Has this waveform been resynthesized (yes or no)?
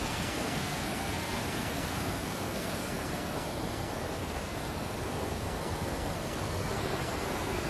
yes